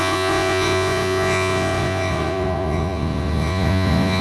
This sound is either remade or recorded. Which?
remade